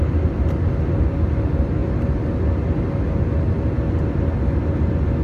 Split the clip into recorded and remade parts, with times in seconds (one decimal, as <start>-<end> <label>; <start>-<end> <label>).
0.0-5.2 recorded